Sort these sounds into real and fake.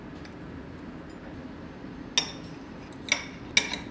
real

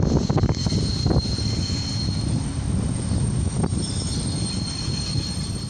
real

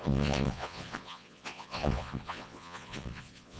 fake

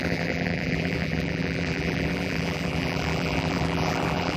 fake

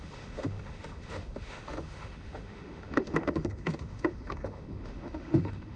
fake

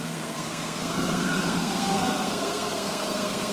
fake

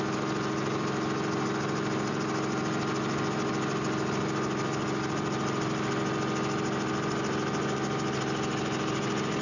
real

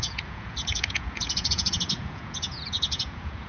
fake